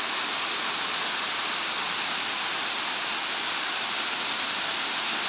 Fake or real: fake